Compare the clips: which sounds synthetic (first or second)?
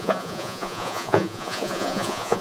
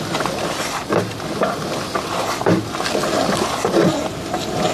first